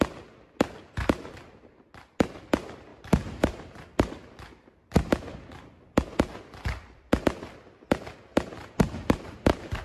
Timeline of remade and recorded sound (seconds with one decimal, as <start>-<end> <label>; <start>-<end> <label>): 0.0-2.9 recorded; 2.9-4.1 remade; 4.1-8.3 recorded; 8.3-9.8 remade